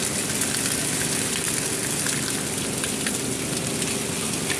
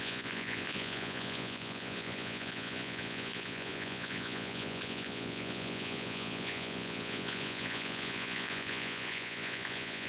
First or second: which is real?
first